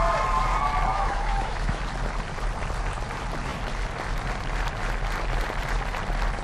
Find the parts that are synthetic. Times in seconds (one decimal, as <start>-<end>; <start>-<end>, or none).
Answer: 0.9-1.8